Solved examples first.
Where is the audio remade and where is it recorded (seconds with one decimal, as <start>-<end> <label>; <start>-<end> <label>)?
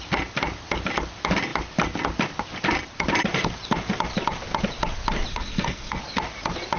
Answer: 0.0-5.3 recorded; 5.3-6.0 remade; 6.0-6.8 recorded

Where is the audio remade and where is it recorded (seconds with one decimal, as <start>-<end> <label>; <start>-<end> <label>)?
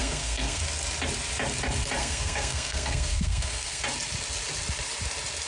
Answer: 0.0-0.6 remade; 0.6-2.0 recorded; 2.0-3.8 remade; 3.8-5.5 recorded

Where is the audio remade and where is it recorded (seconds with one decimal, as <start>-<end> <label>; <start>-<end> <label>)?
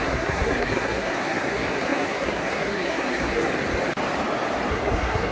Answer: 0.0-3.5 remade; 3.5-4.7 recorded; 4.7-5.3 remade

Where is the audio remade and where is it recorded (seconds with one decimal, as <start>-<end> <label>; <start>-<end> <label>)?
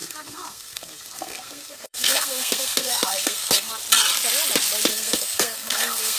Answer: 0.0-3.7 remade; 3.7-4.9 recorded; 4.9-6.2 remade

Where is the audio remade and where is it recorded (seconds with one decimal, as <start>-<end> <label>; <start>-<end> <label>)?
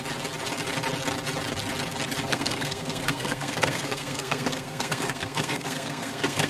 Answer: 0.0-2.3 recorded; 2.3-6.5 remade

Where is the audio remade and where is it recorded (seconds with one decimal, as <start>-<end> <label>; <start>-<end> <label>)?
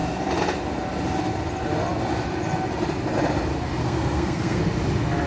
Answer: 0.0-3.8 recorded; 3.8-4.6 remade; 4.6-5.3 recorded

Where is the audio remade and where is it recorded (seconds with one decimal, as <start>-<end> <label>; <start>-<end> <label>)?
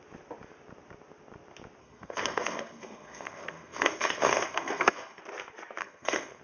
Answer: 0.0-1.8 recorded; 1.8-5.2 remade; 5.2-5.8 recorded; 5.8-6.4 remade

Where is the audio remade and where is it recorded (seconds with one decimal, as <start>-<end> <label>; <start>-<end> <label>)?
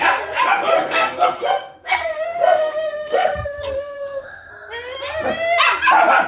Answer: 0.0-0.7 recorded; 0.7-4.5 remade; 4.5-6.3 recorded